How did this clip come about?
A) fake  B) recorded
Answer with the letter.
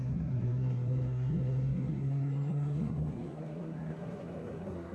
A